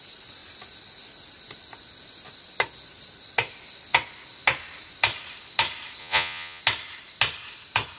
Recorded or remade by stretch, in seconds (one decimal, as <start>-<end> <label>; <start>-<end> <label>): 0.0-6.0 recorded; 6.0-6.6 remade; 6.6-8.0 recorded